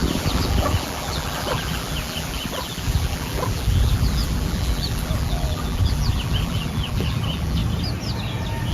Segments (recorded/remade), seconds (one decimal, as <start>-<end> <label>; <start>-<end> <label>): 0.0-7.6 remade; 7.6-8.7 recorded

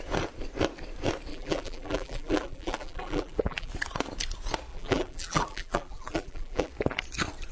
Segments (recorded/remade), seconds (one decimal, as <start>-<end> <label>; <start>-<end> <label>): 0.0-1.3 recorded; 1.3-3.7 remade; 3.7-4.7 recorded; 4.7-6.7 remade; 6.7-7.5 recorded

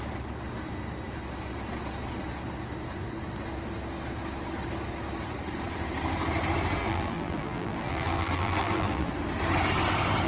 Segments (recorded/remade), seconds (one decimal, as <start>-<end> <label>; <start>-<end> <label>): 0.0-6.8 recorded; 6.8-9.1 remade; 9.1-10.3 recorded

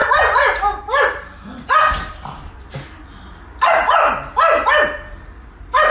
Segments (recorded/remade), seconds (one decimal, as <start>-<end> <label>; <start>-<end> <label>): 0.0-0.8 remade; 0.8-5.9 recorded

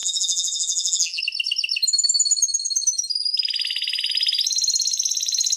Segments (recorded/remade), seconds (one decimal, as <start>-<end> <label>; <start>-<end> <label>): 0.0-1.2 remade; 1.2-5.6 recorded

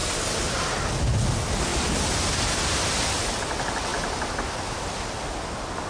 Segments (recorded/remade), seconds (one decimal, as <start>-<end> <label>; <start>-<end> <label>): 0.0-0.6 remade; 0.6-1.7 recorded; 1.7-2.4 remade; 2.4-3.9 recorded; 3.9-5.9 remade

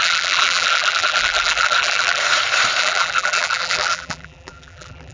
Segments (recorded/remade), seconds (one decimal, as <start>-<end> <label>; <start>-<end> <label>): 0.0-2.2 remade; 2.2-2.8 recorded; 2.8-5.1 remade

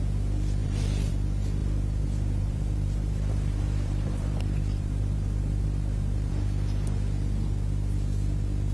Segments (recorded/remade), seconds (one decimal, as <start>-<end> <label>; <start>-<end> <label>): 0.0-0.6 recorded; 0.6-1.1 remade; 1.1-1.6 recorded; 1.6-6.3 remade; 6.3-8.7 recorded